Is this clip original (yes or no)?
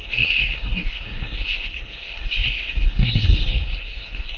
no